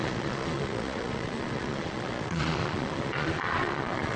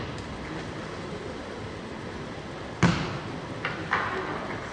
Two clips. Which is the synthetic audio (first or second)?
first